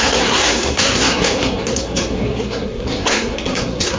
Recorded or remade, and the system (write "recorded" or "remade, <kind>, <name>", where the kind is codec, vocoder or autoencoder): remade, codec, SNAC